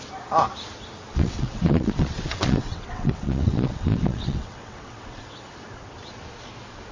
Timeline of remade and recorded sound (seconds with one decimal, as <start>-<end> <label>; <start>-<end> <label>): 0.0-1.1 recorded; 1.1-5.2 remade; 5.2-6.9 recorded